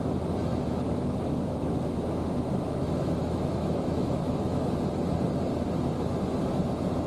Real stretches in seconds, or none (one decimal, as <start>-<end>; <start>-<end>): 0.0-0.4; 4.7-7.1